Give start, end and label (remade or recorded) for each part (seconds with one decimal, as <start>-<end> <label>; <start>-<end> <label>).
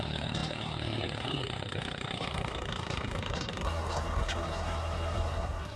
0.0-5.8 remade